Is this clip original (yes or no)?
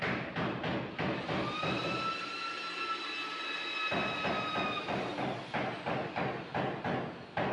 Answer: yes